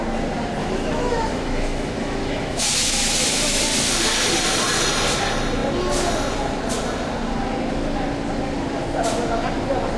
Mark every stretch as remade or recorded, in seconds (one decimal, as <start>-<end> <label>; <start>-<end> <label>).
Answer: 0.0-0.6 recorded; 0.6-3.6 remade; 3.6-10.0 recorded